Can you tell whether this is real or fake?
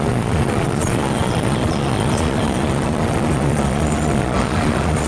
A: fake